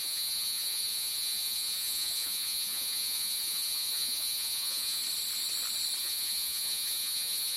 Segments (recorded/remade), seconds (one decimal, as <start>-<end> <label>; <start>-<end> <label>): 0.0-5.0 remade; 5.0-6.0 recorded; 6.0-7.6 remade